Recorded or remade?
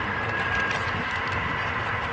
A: recorded